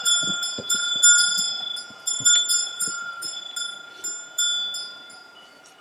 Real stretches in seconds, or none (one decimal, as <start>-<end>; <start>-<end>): 0.0-2.5; 3.4-5.8